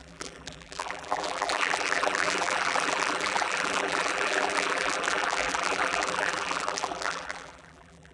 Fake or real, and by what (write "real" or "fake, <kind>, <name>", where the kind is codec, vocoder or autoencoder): fake, vocoder, BigVGAN v2